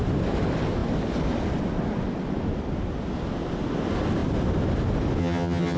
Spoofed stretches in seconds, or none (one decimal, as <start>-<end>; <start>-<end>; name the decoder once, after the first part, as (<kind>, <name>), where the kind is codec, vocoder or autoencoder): 5.2-5.8 (vocoder, HiFi-GAN)